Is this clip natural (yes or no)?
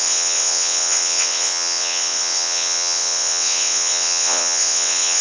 no